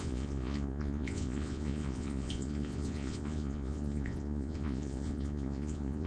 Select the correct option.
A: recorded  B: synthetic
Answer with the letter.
B